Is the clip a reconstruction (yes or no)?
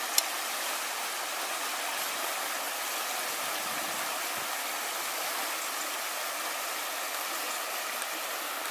no